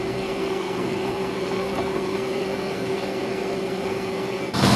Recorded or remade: remade